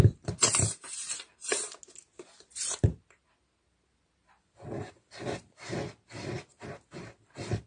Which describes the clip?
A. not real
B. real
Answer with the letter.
B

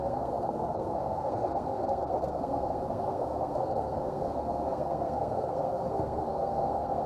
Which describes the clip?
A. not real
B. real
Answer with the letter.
A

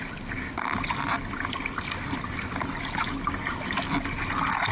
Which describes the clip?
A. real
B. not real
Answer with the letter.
A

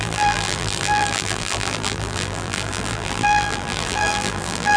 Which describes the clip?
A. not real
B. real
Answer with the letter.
A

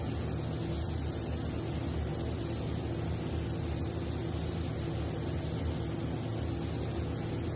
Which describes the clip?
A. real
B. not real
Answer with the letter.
A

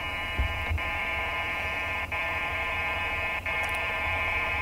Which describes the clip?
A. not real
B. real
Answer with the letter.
A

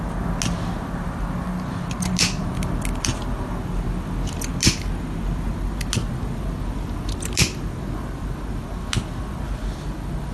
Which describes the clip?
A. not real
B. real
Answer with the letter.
B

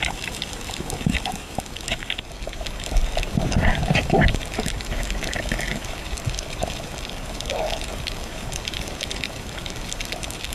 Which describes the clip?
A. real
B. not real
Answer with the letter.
B